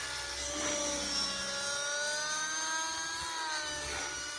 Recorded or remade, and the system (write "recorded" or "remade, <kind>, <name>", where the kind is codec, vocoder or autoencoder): recorded